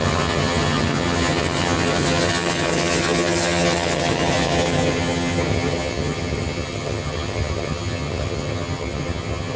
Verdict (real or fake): fake